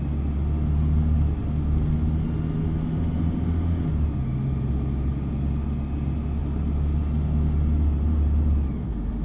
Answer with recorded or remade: recorded